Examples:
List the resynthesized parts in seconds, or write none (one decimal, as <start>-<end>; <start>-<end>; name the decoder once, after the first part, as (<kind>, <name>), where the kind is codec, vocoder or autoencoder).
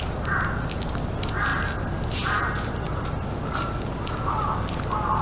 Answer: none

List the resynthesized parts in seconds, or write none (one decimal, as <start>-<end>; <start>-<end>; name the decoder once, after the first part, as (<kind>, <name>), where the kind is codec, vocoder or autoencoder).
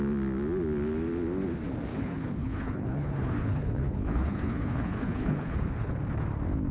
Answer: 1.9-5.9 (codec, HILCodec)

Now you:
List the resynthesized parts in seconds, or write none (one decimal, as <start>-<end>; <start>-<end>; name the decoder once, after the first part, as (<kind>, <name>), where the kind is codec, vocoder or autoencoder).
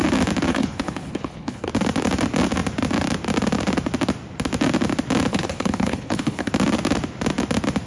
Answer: 0.5-1.7 (codec, HILCodec); 5.3-6.5